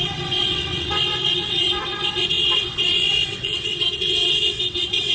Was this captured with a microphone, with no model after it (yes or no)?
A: no